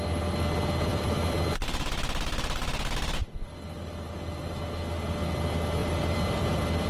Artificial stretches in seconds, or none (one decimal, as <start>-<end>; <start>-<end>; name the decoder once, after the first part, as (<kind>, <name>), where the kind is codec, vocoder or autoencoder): 0.9-4.1 (vocoder, BigVGAN v2); 5.8-6.9